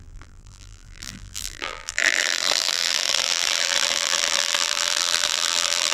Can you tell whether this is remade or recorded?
remade